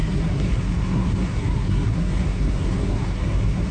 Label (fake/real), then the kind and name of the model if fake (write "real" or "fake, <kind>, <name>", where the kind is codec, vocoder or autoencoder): fake, codec, SNAC